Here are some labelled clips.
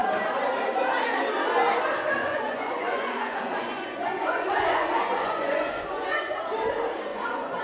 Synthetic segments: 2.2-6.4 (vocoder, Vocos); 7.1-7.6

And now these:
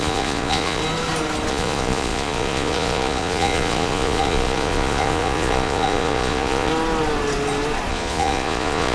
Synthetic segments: 0.0-0.8 (vocoder, Vocos); 1.5-6.7; 7.9-8.9

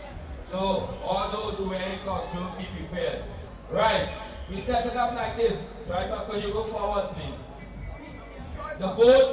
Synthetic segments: 0.0-7.4 (vocoder, Vocos); 8.0-9.3

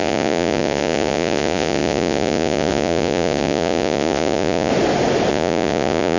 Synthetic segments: 0.0-4.7 (vocoder, Vocos); 5.3-6.2